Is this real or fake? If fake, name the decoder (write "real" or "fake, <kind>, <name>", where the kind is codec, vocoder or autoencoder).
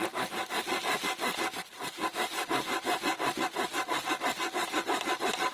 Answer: real